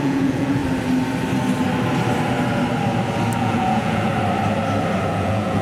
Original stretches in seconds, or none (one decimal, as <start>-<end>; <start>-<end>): 0.6-3.4; 4.1-5.1